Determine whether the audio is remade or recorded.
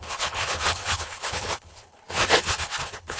remade